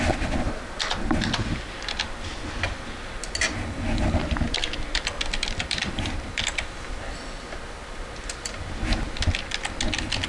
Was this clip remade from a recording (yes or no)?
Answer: no